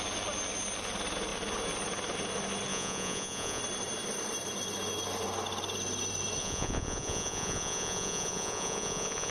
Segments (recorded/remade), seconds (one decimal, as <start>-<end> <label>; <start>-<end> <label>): 0.0-2.7 recorded; 2.7-3.6 remade; 3.6-6.4 recorded; 6.4-9.3 remade